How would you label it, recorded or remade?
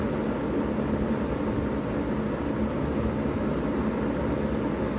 recorded